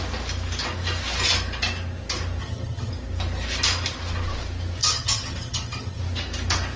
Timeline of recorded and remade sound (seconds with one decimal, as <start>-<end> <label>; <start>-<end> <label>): 0.0-2.4 recorded; 2.4-2.9 remade; 2.9-4.8 recorded; 4.8-6.0 remade; 6.0-6.8 recorded